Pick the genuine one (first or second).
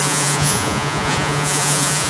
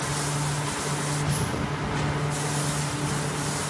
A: second